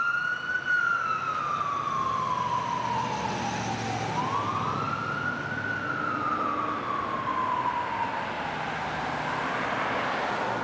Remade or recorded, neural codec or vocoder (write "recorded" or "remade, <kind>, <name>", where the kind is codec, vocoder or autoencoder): recorded